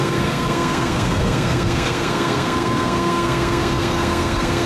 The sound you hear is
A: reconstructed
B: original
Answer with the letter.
A